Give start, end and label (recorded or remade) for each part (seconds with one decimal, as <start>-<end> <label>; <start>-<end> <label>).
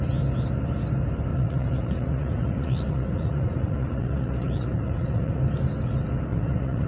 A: 0.0-1.3 recorded; 1.3-5.4 remade; 5.4-6.3 recorded; 6.3-6.9 remade